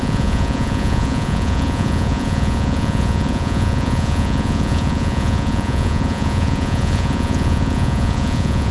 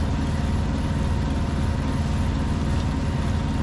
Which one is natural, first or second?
second